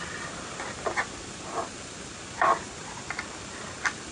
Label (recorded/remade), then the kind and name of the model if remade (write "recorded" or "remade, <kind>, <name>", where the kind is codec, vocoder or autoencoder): recorded